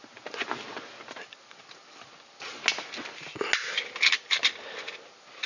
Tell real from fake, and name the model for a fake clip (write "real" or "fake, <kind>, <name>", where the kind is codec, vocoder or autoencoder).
real